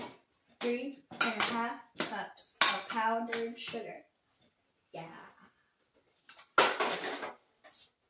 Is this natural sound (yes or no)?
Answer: yes